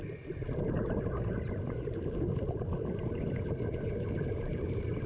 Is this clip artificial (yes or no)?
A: no